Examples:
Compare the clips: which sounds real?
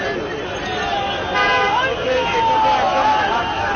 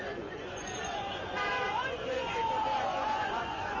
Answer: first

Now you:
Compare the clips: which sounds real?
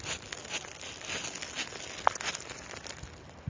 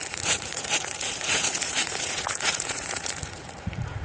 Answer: first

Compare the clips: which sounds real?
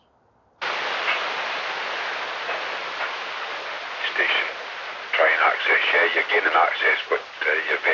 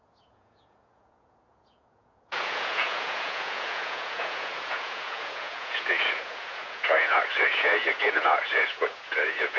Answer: first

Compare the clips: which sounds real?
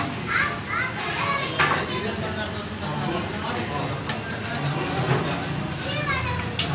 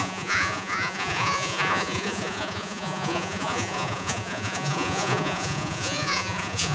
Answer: first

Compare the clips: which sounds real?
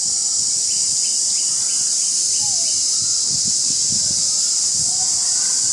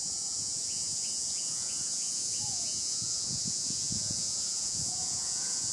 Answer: first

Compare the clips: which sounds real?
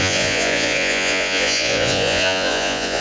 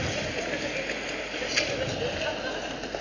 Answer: second